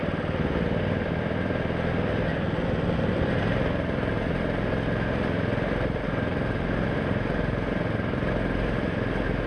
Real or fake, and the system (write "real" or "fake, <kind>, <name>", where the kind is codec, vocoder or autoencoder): real